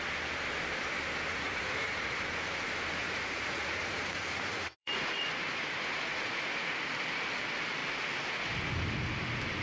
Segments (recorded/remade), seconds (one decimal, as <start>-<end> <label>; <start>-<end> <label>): 0.0-1.3 recorded; 1.3-2.2 remade; 2.2-3.0 recorded; 3.0-6.9 remade; 6.9-9.6 recorded